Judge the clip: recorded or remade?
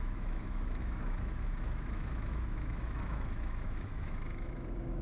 remade